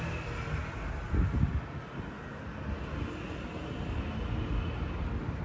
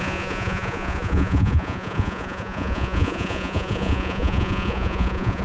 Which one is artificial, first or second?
second